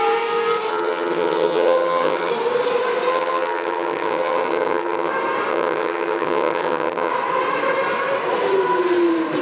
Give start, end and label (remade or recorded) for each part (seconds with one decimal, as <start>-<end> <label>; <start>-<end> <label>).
0.0-0.7 recorded; 0.7-2.3 remade; 2.3-3.1 recorded; 3.1-5.1 remade; 5.1-5.5 recorded; 5.5-7.1 remade; 7.1-9.4 recorded